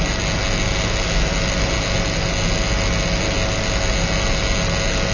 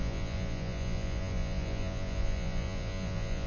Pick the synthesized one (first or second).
second